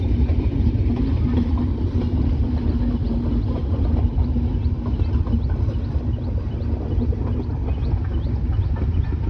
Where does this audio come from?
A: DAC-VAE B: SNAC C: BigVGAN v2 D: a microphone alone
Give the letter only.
D